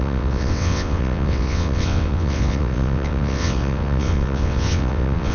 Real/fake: fake